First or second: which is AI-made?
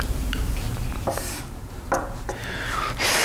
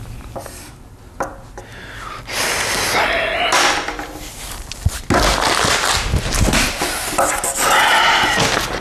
first